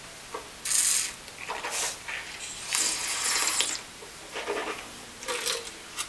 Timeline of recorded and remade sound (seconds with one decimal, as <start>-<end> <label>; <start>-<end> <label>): 0.0-6.1 recorded